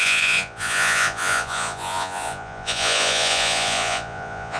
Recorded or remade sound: remade